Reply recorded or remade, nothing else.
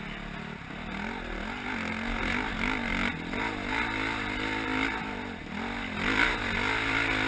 recorded